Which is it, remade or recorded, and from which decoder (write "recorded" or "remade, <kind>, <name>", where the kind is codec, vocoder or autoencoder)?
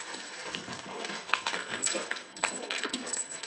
remade, codec, SNAC